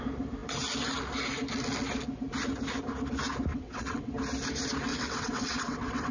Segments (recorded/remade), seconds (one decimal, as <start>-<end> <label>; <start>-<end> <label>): 0.0-3.5 recorded; 3.5-4.1 remade; 4.1-4.9 recorded; 4.9-6.1 remade